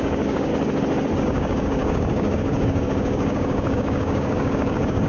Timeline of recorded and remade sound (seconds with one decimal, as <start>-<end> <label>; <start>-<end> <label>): 0.0-0.5 remade; 0.5-1.2 recorded; 1.2-5.1 remade